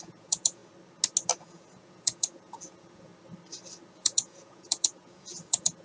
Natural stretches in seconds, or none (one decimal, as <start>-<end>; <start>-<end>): 0.6-1.4; 3.1-3.9